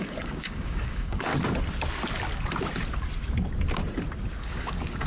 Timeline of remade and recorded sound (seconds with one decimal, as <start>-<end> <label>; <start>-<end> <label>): 0.0-1.3 remade; 1.3-4.4 recorded; 4.4-5.1 remade